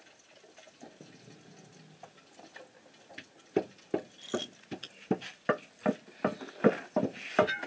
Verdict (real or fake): real